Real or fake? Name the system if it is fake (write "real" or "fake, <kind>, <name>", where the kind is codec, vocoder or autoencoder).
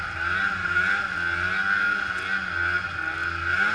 real